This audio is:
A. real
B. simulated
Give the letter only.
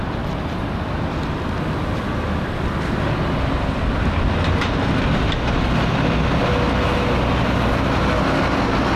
A